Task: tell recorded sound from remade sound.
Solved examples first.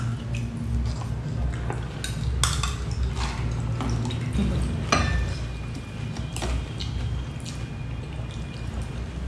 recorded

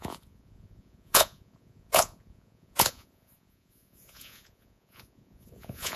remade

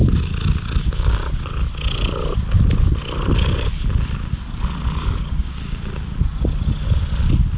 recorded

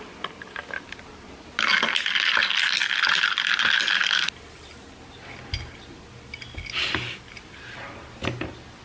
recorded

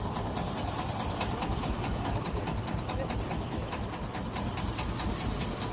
recorded